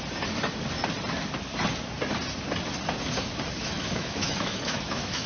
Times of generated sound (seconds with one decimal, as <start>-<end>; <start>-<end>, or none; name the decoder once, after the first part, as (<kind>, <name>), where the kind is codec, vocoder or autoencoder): 3.6-5.3 (autoencoder, DAC-VAE)